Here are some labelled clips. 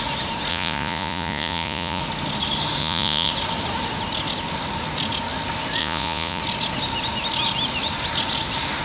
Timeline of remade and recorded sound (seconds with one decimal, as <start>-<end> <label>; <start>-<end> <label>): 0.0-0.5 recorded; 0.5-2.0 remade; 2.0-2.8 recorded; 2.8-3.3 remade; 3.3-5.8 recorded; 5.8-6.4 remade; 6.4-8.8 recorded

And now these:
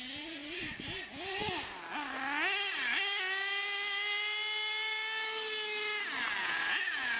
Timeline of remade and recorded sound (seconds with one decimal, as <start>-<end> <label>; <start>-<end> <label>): 0.0-6.4 recorded; 6.4-7.2 remade

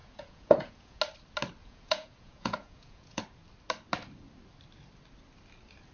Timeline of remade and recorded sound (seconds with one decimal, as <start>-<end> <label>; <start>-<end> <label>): 0.0-1.0 remade; 1.0-1.6 recorded; 1.6-3.2 remade; 3.2-5.9 recorded